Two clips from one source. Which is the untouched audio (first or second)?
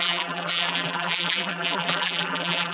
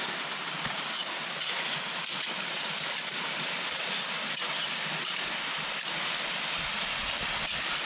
second